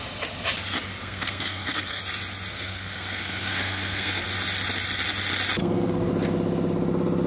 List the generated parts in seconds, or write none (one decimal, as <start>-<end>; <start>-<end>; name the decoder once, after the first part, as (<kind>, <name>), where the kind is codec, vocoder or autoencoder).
1.0-2.0 (codec, SNAC); 2.5-4.2; 5.6-6.1